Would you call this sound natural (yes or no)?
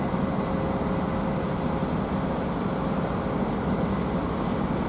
yes